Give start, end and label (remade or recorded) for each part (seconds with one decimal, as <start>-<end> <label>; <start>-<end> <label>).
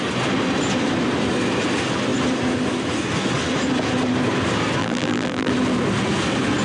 0.0-4.8 recorded; 4.8-5.5 remade; 5.5-6.6 recorded